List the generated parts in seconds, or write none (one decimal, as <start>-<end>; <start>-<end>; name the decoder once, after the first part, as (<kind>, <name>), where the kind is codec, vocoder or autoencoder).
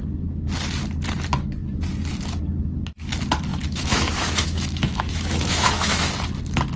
3.5-6.1 (autoencoder, DAC-VAE)